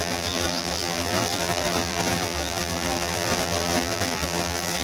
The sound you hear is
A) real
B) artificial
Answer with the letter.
B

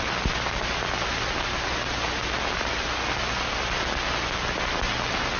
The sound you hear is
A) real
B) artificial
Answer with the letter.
A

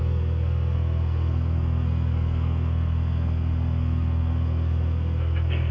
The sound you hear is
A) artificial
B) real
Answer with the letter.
A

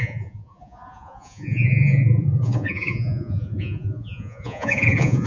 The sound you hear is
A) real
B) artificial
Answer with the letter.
B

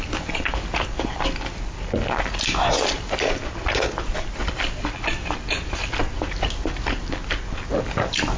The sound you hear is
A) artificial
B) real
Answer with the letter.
B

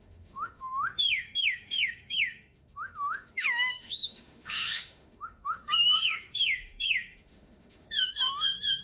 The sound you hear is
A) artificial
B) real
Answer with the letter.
A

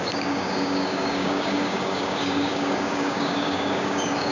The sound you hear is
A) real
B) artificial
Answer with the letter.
B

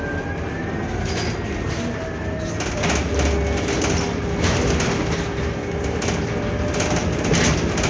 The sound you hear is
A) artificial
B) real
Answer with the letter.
B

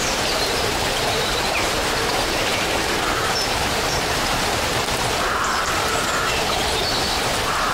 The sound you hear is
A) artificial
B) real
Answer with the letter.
A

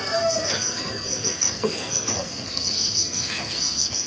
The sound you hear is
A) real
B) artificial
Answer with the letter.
B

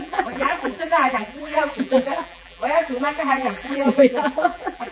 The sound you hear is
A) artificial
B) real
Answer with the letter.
A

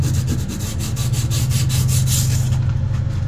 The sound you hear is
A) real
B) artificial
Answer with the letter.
A